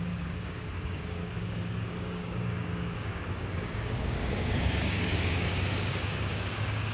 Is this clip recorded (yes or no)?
no